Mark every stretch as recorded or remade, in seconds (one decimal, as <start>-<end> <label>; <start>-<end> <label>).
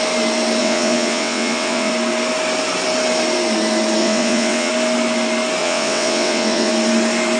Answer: 0.0-0.6 recorded; 0.6-1.9 remade; 1.9-4.0 recorded; 4.0-4.7 remade; 4.7-5.6 recorded; 5.6-6.7 remade; 6.7-7.4 recorded